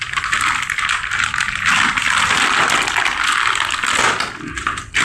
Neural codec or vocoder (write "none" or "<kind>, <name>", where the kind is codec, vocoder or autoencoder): none